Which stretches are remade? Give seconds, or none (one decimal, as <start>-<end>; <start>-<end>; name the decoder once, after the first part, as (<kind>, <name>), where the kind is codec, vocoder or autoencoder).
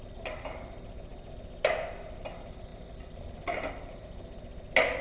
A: none